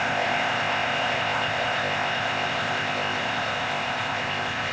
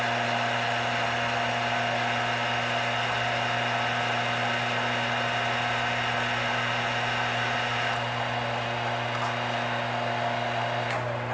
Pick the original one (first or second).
second